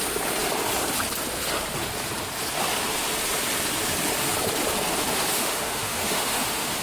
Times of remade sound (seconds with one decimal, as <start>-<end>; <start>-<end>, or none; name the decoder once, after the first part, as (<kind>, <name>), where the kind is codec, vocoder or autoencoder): 5.3-6.8 (autoencoder, DAC-VAE)